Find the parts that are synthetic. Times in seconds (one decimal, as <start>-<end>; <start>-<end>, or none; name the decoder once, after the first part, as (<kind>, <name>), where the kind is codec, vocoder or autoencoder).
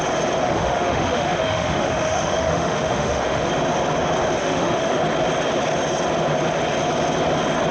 0.4-3.5 (autoencoder, DAC-VAE); 4.4-5.0